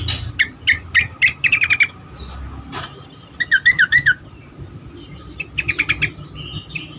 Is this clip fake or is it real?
real